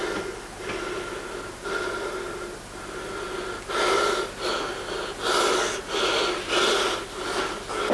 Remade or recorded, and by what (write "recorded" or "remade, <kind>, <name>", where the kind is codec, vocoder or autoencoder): recorded